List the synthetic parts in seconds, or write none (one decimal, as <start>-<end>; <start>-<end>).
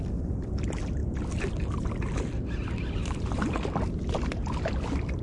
none